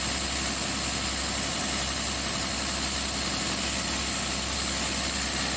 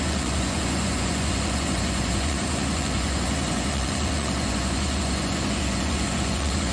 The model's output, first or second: second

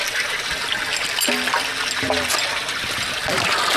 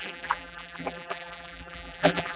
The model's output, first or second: second